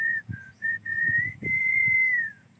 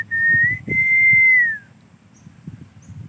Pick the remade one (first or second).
first